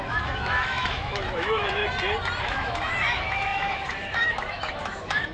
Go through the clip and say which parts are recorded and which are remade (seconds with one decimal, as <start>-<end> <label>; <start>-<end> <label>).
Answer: 0.0-1.8 remade; 1.8-2.4 recorded; 2.4-5.3 remade